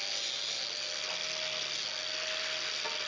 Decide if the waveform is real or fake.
real